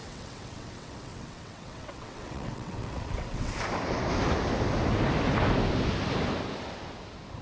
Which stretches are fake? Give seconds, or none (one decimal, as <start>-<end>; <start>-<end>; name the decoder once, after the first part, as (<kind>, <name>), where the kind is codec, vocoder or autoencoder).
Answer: 0.0-3.5 (vocoder, WaveNeXt)